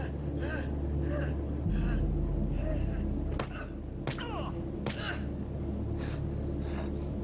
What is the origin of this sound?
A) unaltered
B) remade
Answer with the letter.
A